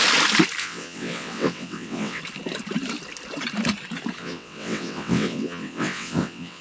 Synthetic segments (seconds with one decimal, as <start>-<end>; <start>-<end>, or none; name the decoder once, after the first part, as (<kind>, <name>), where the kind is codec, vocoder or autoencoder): 0.6-2.2 (vocoder, WaveNeXt); 4.2-6.6